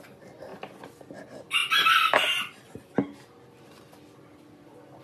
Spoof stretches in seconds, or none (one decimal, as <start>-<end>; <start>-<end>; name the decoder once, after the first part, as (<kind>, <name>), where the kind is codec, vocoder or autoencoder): none